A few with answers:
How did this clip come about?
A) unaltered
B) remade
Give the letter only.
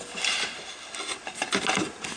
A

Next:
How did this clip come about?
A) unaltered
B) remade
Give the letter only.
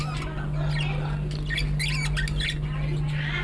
A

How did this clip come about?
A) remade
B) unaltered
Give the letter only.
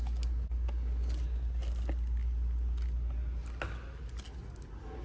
B